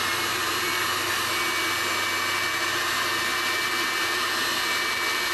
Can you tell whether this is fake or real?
real